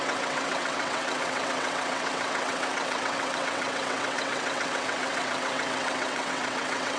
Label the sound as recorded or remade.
remade